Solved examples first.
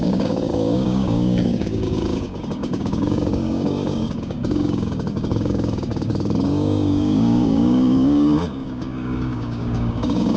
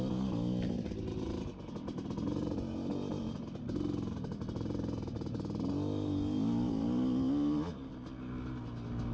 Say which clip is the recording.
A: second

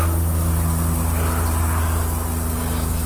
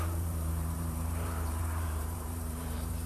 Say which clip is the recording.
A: first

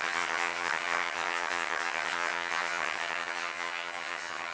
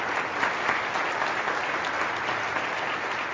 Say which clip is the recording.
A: second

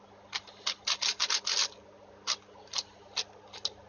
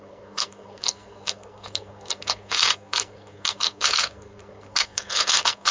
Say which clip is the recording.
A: first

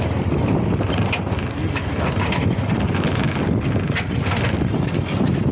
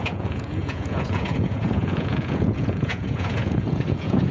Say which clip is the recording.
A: first